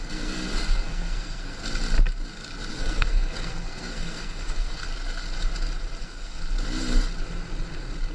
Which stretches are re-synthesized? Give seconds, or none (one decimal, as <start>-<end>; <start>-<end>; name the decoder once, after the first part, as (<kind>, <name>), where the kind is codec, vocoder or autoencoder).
0.0-1.6 (codec, SNAC); 2.7-4.9; 6.0-6.4